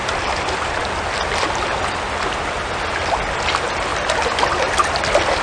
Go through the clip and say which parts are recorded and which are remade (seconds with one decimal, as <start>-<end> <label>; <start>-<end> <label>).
0.0-0.8 remade; 0.8-3.9 recorded; 3.9-4.5 remade; 4.5-5.4 recorded